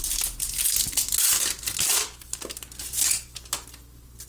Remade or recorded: recorded